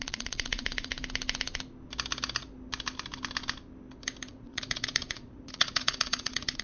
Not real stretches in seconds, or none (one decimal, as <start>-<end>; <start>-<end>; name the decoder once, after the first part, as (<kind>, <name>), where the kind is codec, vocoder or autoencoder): 0.0-0.9 (vocoder, Vocos); 4.3-6.6